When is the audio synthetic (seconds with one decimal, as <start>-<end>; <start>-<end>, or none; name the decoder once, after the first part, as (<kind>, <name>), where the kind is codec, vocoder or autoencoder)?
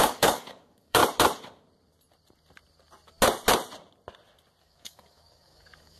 0.0-1.0 (codec, DAC); 4.6-6.0